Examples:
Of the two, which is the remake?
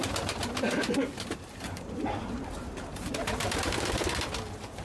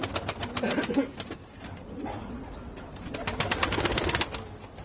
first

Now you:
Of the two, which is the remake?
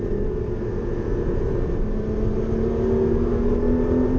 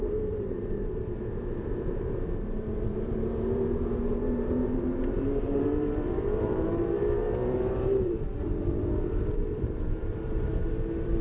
second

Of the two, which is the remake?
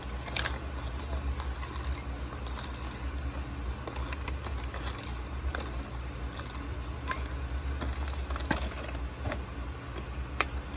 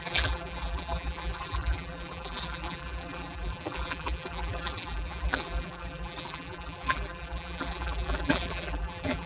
second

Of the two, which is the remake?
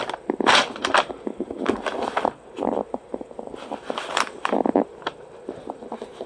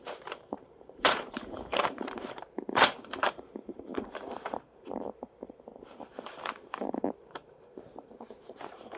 second